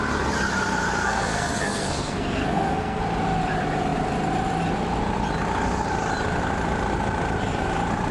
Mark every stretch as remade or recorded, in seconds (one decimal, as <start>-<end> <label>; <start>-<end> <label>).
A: 0.0-1.0 recorded; 1.0-3.0 remade; 3.0-8.1 recorded